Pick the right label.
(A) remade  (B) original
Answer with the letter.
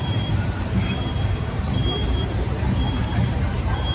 A